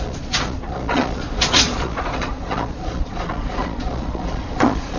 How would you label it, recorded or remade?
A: remade